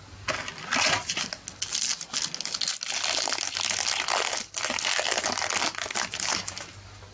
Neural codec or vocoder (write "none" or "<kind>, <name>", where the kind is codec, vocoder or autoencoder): none